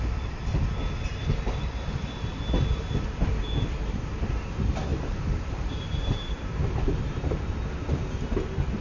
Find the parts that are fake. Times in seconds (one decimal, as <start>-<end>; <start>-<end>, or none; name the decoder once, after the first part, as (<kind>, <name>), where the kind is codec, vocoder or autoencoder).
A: 1.1-1.8 (vocoder, BigVGAN v2); 4.9-7.5